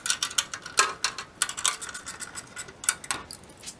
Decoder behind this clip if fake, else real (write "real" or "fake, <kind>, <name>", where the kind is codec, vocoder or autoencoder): real